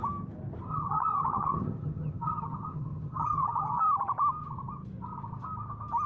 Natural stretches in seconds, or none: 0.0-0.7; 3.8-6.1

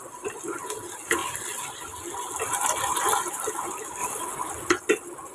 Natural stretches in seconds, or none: 0.0-5.3